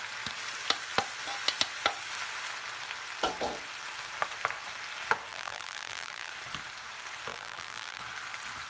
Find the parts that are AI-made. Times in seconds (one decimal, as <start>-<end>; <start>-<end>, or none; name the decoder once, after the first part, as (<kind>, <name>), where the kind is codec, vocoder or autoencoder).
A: 5.3-6.3 (vocoder, BigVGAN v2); 7.3-8.0